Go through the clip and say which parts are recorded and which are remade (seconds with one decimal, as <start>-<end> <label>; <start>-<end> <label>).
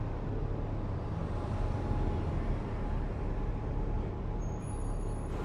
0.0-5.4 recorded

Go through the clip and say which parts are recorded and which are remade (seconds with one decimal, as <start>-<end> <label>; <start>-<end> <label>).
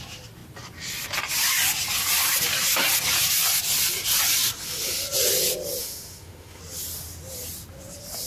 0.0-5.8 recorded; 5.8-6.6 remade; 6.6-8.3 recorded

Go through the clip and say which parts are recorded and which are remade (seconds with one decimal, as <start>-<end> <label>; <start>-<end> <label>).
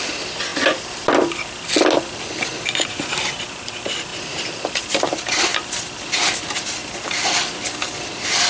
0.0-8.5 recorded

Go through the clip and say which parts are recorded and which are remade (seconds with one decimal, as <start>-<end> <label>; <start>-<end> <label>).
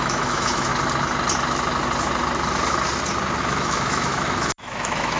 0.0-0.7 remade; 0.7-3.4 recorded; 3.4-5.2 remade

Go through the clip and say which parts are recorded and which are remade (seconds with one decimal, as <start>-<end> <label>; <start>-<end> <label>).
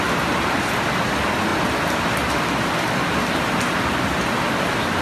0.0-5.0 recorded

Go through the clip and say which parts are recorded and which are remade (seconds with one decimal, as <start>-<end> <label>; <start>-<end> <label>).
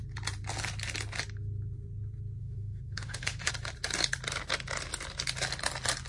0.0-2.4 recorded; 2.4-3.5 remade; 3.5-6.1 recorded